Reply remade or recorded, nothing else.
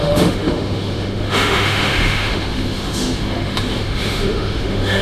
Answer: remade